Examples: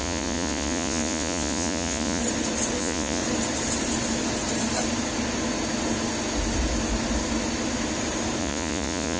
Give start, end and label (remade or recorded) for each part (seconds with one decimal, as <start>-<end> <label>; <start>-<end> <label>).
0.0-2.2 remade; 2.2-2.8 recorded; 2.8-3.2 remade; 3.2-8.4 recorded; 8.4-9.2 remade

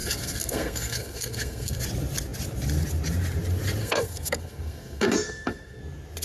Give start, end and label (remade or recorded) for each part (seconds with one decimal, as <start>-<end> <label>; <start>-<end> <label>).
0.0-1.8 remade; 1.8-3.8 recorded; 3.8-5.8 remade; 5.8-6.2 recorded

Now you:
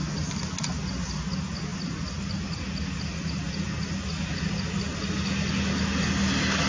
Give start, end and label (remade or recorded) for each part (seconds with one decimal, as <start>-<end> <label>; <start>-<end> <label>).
0.0-6.7 recorded

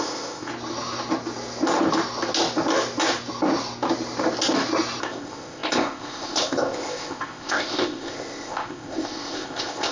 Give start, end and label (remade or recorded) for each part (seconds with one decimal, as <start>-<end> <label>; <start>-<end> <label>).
0.0-0.5 remade; 0.5-5.0 recorded; 5.0-9.9 remade

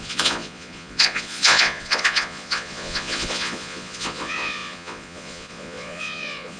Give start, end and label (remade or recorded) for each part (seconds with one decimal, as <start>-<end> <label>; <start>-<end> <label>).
0.0-6.6 remade